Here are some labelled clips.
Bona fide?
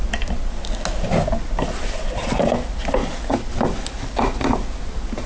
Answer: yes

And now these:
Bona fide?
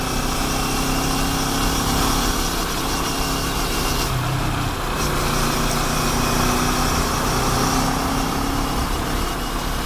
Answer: yes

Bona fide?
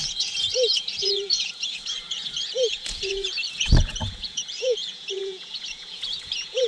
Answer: no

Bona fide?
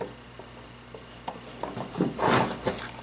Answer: yes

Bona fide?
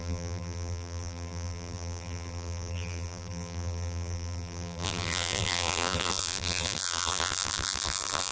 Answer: no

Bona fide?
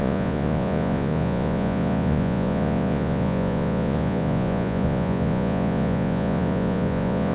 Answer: no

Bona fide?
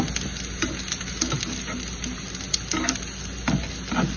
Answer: yes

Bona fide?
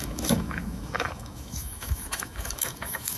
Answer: no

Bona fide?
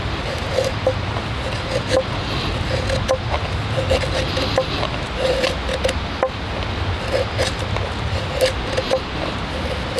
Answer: yes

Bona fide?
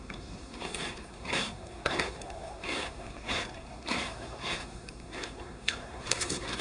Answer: no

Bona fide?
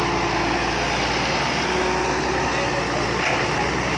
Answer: yes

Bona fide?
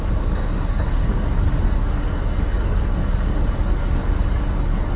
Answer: no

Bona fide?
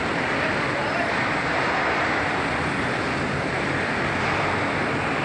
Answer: no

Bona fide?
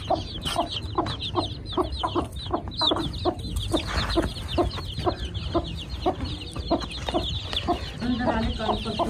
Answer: yes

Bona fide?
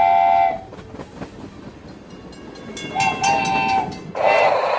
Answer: yes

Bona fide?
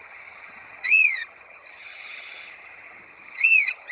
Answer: no